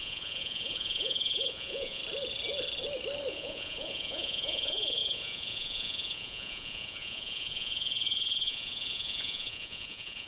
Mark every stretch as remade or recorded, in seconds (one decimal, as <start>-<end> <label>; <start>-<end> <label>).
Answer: 0.0-2.0 remade; 2.0-3.3 recorded; 3.3-10.3 remade